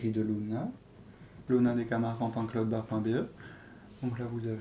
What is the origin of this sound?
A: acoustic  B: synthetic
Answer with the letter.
A